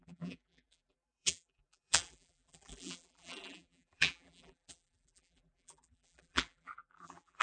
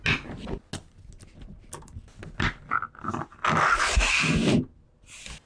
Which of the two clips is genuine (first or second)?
second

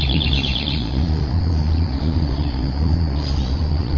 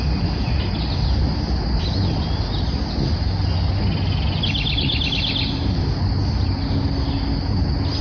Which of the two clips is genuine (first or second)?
second